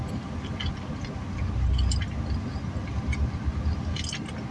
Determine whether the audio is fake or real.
real